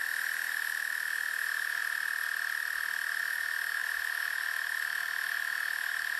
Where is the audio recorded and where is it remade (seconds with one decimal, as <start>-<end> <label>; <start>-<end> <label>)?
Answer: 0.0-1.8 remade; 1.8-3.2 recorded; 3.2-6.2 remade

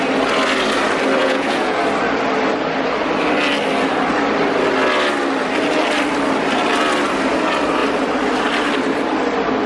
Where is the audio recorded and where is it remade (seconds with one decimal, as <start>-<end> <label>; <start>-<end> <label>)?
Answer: 0.0-1.2 recorded; 1.2-1.8 remade; 1.8-9.7 recorded

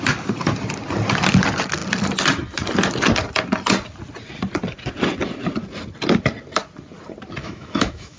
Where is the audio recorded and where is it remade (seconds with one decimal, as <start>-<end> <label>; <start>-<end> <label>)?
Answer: 0.0-7.4 recorded; 7.4-8.2 remade